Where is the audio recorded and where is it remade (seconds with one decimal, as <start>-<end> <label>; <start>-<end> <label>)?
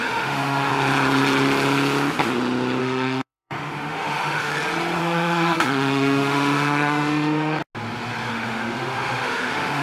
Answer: 0.0-0.7 remade; 0.7-2.8 recorded; 2.8-4.5 remade; 4.5-5.0 recorded; 5.0-7.6 remade; 7.6-8.3 recorded; 8.3-9.8 remade